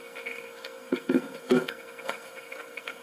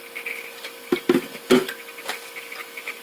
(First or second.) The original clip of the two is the second